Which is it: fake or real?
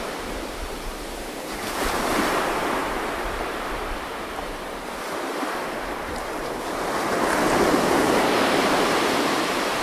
fake